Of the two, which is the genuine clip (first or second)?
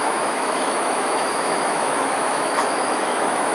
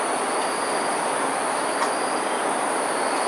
second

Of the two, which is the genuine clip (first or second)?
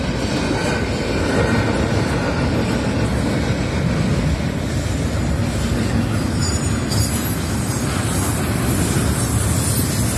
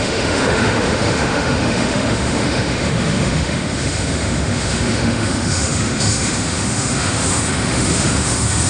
first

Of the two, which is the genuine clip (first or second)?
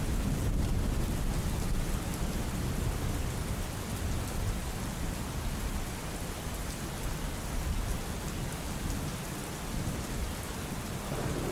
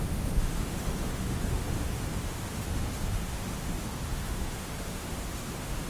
first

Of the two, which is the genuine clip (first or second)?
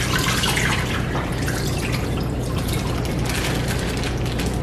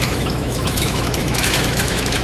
first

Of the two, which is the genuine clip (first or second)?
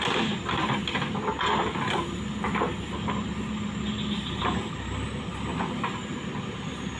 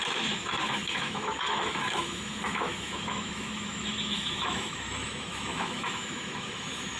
first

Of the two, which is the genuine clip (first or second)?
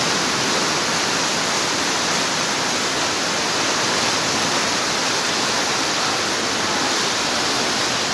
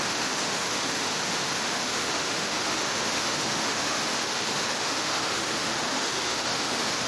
first